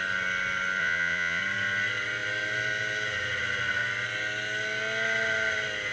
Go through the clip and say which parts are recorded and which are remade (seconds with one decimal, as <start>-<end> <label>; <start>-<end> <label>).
0.0-0.8 recorded; 0.8-1.4 remade; 1.4-5.9 recorded